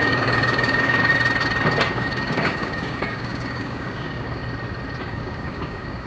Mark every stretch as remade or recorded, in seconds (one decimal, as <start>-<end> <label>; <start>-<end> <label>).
0.0-1.1 remade; 1.1-1.9 recorded; 1.9-4.4 remade; 4.4-5.0 recorded; 5.0-6.1 remade